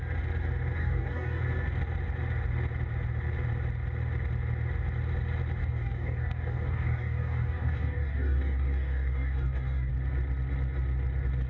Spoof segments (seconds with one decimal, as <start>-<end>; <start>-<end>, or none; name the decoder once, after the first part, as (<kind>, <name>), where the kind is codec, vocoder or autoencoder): 0.8-1.4 (codec, DAC); 5.6-9.9

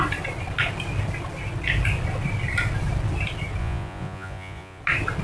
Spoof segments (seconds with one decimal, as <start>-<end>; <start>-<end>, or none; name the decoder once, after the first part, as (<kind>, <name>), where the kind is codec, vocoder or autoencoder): 3.6-4.8 (vocoder, Vocos)

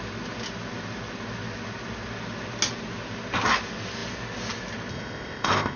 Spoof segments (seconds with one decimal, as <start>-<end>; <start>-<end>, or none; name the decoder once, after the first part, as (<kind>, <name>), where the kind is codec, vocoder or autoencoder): 4.9-5.8 (codec, ZipCodec)

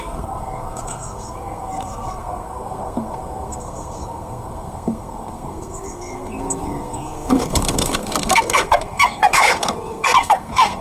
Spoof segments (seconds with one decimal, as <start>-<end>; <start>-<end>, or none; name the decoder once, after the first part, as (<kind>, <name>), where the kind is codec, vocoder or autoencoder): 0.0-10.8 (codec, SNAC)

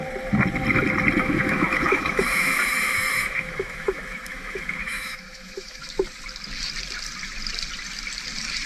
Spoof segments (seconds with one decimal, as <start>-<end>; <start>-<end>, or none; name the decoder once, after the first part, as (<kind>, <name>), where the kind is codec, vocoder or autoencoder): 1.2-5.9 (autoencoder, DAC-VAE)